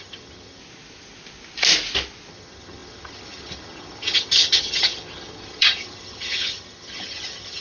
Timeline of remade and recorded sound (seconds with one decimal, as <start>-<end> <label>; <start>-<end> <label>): 0.0-0.6 remade; 0.6-2.3 recorded; 2.3-7.6 remade